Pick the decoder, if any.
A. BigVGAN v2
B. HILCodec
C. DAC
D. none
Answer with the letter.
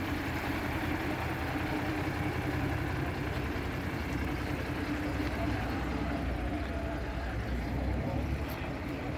D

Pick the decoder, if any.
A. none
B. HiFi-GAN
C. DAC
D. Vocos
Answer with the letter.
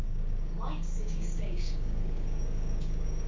C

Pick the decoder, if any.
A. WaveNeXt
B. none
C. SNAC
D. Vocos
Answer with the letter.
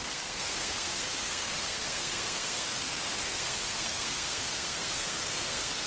C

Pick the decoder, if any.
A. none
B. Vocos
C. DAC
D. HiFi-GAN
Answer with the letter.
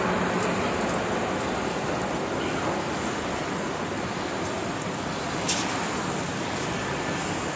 A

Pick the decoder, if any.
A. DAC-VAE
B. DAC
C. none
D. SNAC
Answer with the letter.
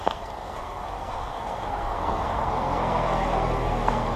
D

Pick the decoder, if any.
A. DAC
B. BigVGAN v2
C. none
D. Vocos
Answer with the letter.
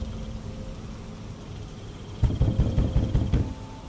C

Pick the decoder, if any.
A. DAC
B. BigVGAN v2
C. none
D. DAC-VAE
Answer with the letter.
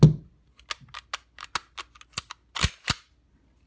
C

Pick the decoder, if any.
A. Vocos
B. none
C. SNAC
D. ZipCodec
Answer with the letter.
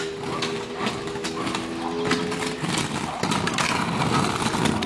B